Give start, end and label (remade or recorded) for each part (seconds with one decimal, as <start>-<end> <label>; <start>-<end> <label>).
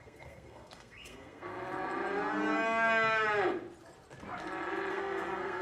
0.0-1.5 remade; 1.5-4.9 recorded; 4.9-5.6 remade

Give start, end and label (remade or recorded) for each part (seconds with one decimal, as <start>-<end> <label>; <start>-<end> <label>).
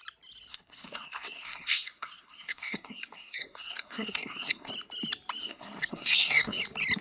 0.0-0.5 recorded; 0.5-4.7 remade; 4.7-5.4 recorded; 5.4-6.6 remade; 6.6-7.0 recorded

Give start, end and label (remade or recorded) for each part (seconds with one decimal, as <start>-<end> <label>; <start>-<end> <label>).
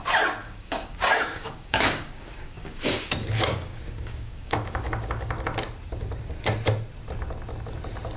0.0-0.4 recorded; 0.4-5.3 remade; 5.3-8.2 recorded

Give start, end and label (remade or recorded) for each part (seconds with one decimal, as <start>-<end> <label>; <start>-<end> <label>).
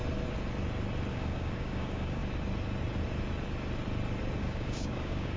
0.0-1.1 recorded; 1.1-2.2 remade; 2.2-4.4 recorded; 4.4-5.4 remade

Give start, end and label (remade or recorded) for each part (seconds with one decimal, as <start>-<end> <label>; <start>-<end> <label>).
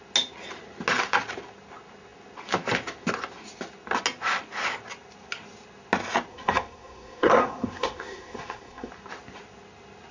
0.0-6.3 recorded; 6.3-8.9 remade; 8.9-10.1 recorded